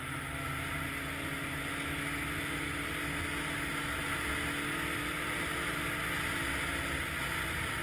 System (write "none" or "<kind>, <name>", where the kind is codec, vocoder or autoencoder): none